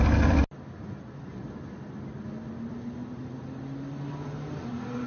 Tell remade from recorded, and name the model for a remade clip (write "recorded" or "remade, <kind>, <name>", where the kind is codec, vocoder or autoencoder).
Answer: recorded